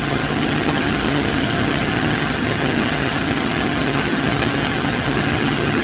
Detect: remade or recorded remade